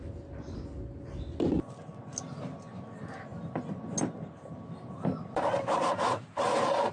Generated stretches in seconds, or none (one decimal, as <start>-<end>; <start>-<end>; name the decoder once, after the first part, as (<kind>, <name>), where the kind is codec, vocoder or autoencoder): none